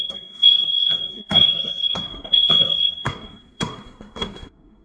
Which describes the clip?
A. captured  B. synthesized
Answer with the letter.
B